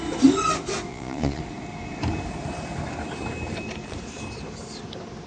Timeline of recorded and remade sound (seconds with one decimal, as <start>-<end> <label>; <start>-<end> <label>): 0.0-0.9 recorded; 0.9-1.4 remade; 1.4-5.3 recorded

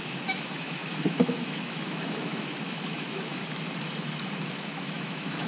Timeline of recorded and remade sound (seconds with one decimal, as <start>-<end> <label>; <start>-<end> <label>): 0.0-3.4 remade; 3.4-4.5 recorded; 4.5-5.5 remade

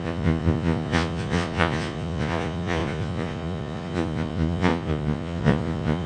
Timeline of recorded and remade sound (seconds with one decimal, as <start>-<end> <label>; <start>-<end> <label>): 0.0-6.1 remade

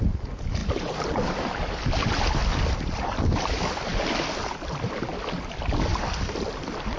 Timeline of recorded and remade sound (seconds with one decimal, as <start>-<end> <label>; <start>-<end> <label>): 0.0-7.0 recorded

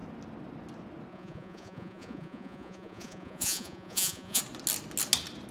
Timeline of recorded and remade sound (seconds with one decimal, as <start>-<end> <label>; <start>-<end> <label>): 0.0-1.1 recorded; 1.1-4.4 remade; 4.4-5.5 recorded